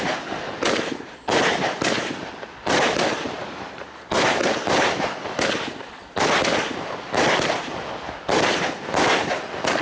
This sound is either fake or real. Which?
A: real